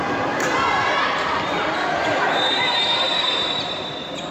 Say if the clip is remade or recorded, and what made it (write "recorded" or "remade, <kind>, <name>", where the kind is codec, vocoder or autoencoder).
remade, vocoder, BigVGAN v2